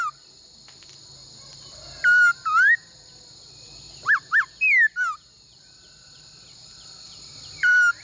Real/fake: real